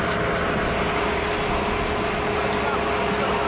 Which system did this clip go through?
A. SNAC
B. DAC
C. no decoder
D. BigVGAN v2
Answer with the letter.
C